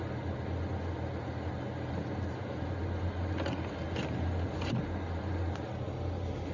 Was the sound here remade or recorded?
recorded